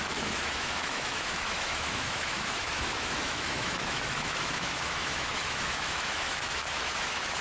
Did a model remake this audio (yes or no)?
yes